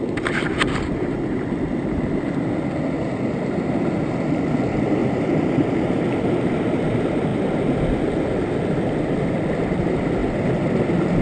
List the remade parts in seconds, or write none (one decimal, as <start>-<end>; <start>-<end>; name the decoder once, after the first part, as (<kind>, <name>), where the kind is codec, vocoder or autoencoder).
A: 0.0-11.2 (vocoder, BigVGAN v2)